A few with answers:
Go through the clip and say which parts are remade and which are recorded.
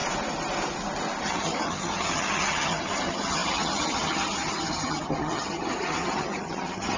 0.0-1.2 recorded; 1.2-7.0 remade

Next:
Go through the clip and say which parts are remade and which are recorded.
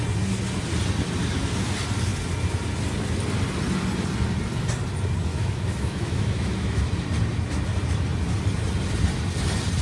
0.0-5.3 recorded; 5.3-6.8 remade; 6.8-9.8 recorded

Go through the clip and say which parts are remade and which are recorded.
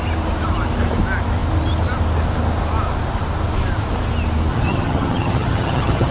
0.0-4.5 recorded; 4.5-6.1 remade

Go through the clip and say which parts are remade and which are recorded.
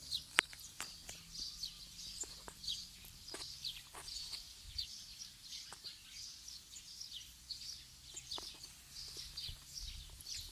0.0-1.7 recorded; 1.7-5.9 remade; 5.9-10.5 recorded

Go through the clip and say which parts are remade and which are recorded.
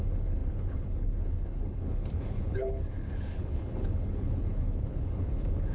0.0-5.7 remade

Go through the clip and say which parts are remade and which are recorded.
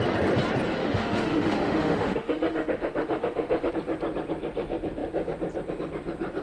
0.0-0.8 recorded; 0.8-3.7 remade; 3.7-6.4 recorded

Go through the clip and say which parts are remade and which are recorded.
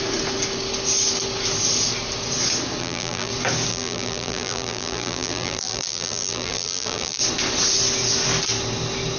0.0-2.8 recorded; 2.8-3.3 remade; 3.3-3.7 recorded; 3.7-7.2 remade; 7.2-9.2 recorded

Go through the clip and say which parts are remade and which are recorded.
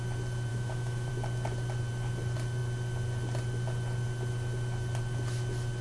0.0-0.5 recorded; 0.5-1.1 remade; 1.1-5.8 recorded